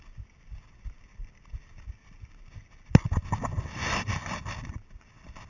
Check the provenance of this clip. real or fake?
real